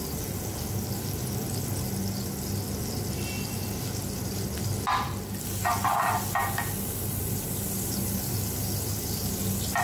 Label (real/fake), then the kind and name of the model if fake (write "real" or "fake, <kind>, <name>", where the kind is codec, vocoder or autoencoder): real